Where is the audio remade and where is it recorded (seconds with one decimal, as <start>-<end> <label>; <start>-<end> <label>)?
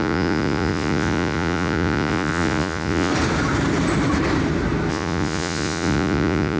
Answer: 0.0-3.1 remade; 3.1-4.9 recorded; 4.9-6.6 remade